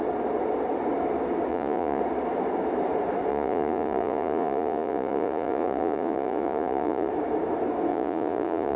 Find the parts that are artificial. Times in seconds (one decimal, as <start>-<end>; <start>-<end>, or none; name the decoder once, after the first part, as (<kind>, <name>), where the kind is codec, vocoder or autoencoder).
1.5-2.0 (vocoder, Vocos); 3.3-7.1; 7.9-8.8